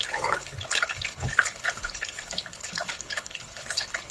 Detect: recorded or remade remade